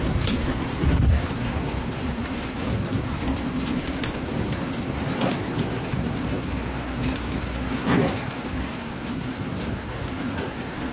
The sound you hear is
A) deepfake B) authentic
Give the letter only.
A